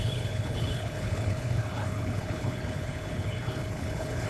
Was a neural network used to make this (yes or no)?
yes